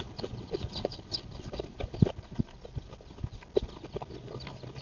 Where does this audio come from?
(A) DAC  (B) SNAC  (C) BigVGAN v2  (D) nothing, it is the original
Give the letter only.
D